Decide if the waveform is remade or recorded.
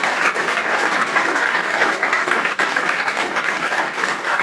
remade